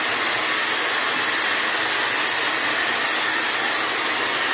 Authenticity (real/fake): real